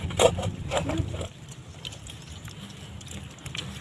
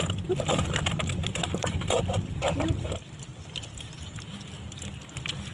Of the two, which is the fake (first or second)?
second